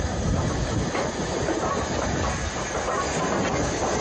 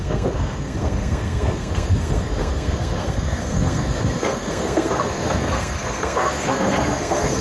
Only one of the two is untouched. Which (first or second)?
first